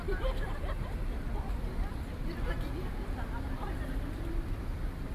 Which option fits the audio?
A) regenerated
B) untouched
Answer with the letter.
B